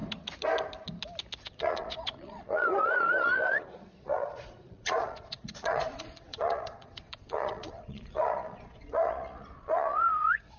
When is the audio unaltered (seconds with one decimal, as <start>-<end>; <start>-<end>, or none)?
0.0-1.4